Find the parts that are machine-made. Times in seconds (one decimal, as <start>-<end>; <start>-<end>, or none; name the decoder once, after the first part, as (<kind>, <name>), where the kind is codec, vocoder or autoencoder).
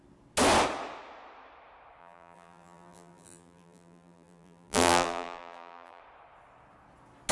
2.0-6.0 (vocoder, BigVGAN v2)